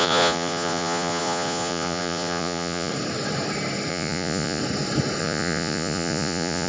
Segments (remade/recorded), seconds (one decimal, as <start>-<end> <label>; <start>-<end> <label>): 0.0-2.9 remade; 2.9-3.9 recorded; 3.9-4.6 remade; 4.6-5.2 recorded; 5.2-6.7 remade